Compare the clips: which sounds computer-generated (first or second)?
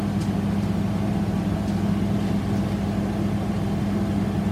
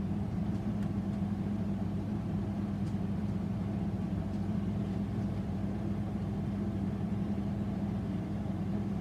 second